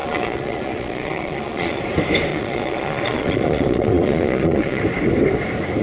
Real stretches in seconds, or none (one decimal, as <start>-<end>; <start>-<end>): 1.8-2.3; 4.8-5.8